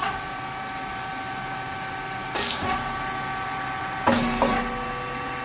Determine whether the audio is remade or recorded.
recorded